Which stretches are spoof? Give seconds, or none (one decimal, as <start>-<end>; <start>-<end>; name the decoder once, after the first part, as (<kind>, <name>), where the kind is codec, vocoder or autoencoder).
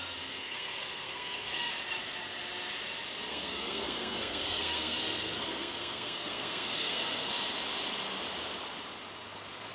0.4-1.7 (codec, SNAC); 3.3-7.3